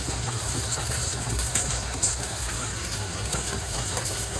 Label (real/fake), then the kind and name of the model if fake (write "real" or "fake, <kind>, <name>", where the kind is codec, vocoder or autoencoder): fake, codec, SNAC